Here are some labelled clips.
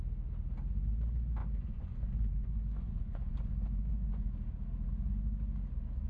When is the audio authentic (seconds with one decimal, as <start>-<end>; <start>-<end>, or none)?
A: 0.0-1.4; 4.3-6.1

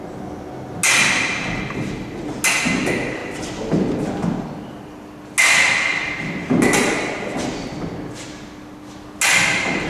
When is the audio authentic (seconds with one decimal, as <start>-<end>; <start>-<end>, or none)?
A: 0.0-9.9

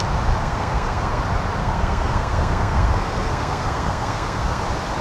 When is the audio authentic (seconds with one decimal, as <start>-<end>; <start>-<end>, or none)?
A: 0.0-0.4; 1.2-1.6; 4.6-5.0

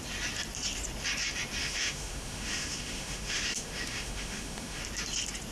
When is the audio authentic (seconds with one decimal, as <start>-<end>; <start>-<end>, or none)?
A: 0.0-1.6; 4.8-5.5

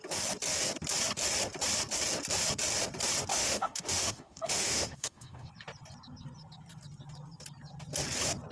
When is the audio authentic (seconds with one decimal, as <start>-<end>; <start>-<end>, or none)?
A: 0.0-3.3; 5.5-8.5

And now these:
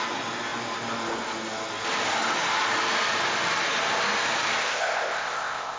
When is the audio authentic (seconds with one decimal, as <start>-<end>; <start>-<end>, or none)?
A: 0.0-4.6

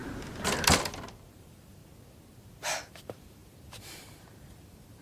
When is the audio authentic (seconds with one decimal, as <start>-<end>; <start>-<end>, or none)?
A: 0.0-1.3; 1.8-2.8

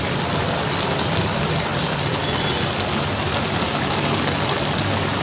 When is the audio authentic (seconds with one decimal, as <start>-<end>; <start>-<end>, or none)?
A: 0.0-5.2